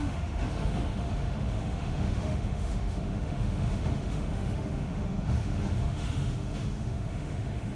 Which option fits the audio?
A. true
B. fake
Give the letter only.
B